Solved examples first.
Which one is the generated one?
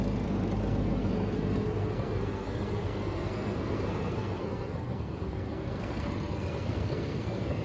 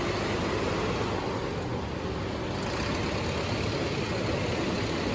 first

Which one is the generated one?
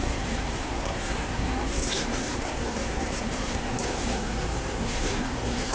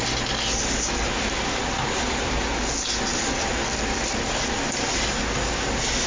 first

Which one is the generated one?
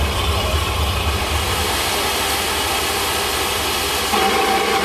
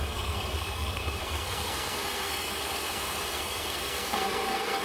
second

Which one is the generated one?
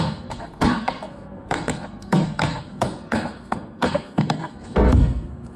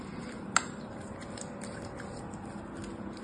first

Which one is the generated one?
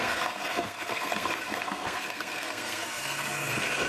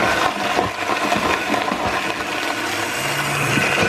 first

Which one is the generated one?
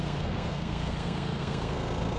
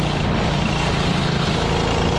first